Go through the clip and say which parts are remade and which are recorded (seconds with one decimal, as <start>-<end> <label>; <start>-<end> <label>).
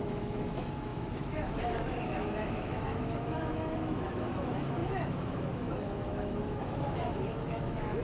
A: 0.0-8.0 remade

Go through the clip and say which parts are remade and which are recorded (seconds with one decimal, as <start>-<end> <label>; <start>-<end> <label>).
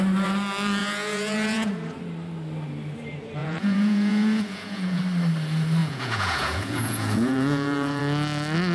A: 0.0-0.8 recorded; 0.8-1.7 remade; 1.7-3.4 recorded; 3.4-5.0 remade; 5.0-5.8 recorded; 5.8-8.0 remade; 8.0-8.7 recorded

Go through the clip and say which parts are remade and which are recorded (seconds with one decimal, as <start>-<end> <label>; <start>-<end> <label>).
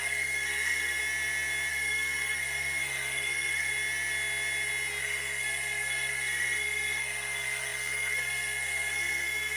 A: 0.0-1.0 remade; 1.0-1.7 recorded; 1.7-3.7 remade; 3.7-5.0 recorded; 5.0-9.6 remade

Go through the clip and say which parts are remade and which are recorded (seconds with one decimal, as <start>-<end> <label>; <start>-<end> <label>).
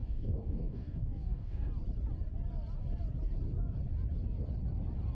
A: 0.0-1.7 remade; 1.7-5.1 recorded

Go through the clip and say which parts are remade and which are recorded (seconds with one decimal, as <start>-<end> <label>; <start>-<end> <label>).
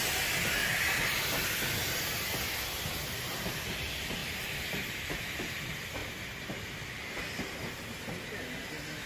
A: 0.0-0.6 recorded; 0.6-1.2 remade; 1.2-4.2 recorded; 4.2-5.6 remade; 5.6-9.1 recorded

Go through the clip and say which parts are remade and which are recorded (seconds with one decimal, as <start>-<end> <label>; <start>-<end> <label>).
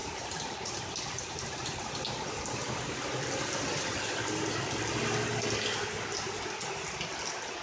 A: 0.0-1.9 remade; 1.9-7.6 recorded